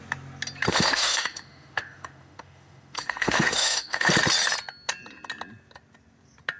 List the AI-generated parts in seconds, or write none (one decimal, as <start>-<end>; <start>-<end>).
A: 0.7-4.1